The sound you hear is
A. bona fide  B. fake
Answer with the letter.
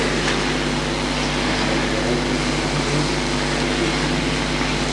A